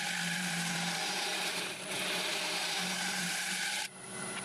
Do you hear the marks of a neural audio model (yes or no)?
yes